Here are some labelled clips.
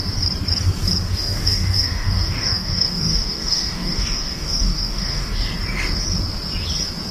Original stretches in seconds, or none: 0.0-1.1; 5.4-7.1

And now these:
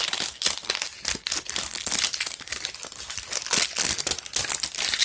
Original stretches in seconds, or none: 0.0-5.0

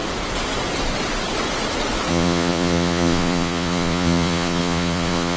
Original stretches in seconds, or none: 0.0-2.1

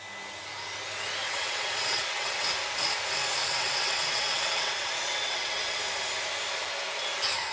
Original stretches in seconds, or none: 0.0-1.2; 2.4-3.4; 5.8-7.5